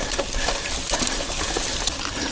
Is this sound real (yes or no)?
yes